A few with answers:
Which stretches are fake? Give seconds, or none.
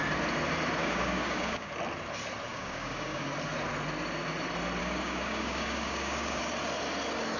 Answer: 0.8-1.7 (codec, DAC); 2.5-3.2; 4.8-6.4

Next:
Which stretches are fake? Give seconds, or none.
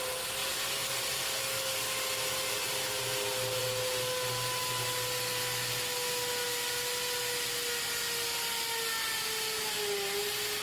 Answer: none